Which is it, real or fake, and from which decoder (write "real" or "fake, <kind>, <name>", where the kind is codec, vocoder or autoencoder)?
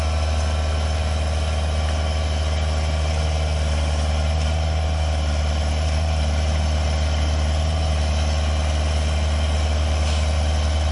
real